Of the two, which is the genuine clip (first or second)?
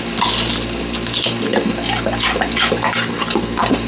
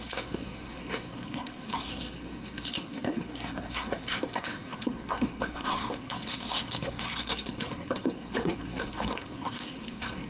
first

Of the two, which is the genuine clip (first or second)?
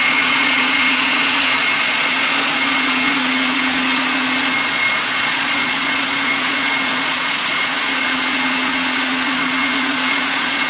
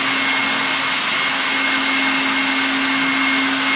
second